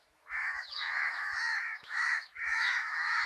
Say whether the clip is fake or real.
fake